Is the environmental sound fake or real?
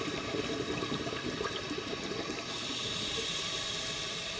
fake